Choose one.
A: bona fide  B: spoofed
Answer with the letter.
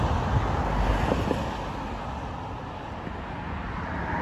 A